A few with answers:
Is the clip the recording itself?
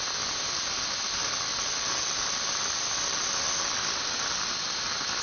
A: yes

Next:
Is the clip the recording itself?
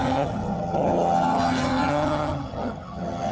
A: no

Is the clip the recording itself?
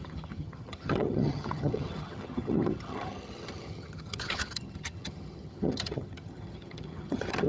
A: no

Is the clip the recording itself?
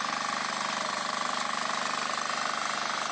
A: yes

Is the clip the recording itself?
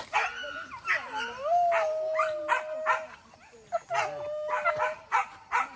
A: yes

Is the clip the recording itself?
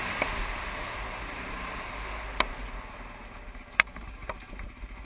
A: yes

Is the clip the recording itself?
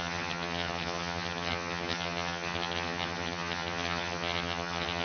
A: no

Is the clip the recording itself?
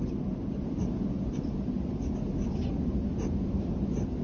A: yes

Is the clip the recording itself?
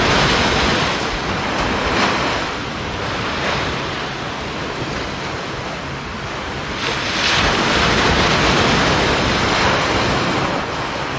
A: yes